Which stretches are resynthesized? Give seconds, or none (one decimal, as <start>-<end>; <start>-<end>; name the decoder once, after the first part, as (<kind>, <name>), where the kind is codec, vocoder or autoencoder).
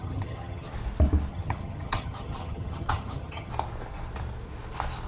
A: 0.0-0.7 (vocoder, HiFi-GAN); 1.3-3.5